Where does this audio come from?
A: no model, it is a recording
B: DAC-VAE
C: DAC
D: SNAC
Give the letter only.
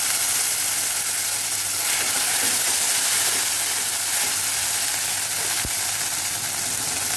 A